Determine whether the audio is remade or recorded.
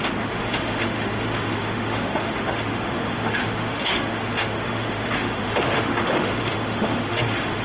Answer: remade